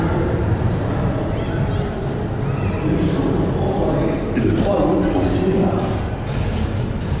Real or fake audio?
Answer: real